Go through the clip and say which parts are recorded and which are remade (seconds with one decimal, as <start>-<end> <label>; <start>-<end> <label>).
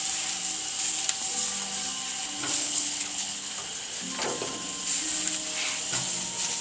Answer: 0.0-2.6 recorded; 2.6-3.5 remade; 3.5-6.6 recorded